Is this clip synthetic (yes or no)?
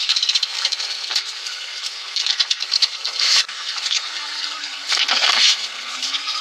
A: yes